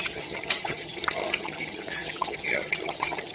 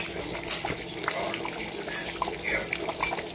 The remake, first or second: first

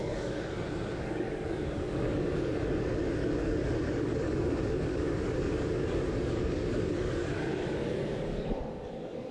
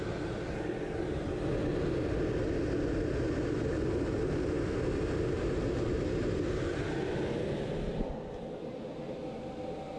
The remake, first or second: first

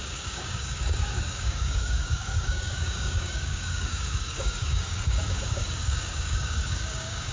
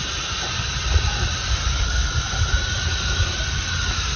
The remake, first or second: first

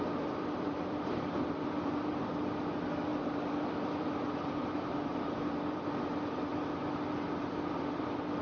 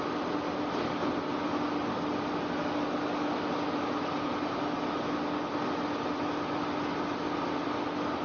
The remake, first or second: first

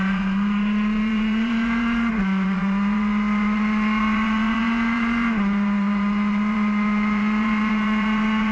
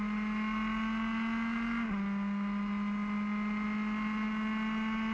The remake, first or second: first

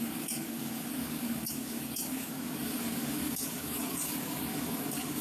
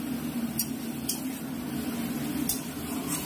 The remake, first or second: first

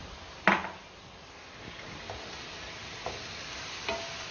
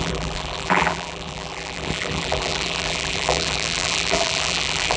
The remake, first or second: second